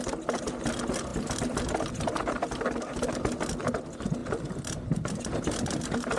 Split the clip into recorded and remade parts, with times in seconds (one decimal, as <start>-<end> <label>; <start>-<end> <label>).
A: 0.0-6.2 recorded